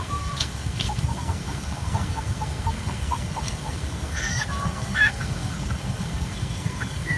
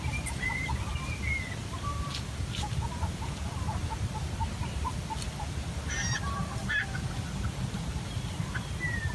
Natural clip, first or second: second